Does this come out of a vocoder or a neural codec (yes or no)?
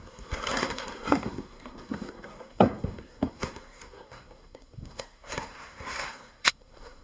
yes